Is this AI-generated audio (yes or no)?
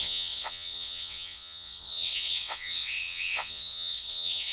yes